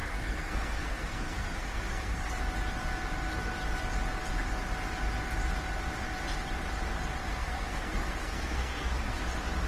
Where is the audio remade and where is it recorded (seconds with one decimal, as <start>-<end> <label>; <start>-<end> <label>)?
0.0-2.4 remade; 2.4-7.2 recorded; 7.2-9.2 remade; 9.2-9.7 recorded